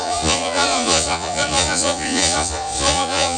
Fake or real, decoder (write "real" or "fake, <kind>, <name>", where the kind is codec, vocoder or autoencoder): fake, vocoder, Vocos